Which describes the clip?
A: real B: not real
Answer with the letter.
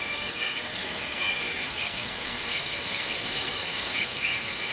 B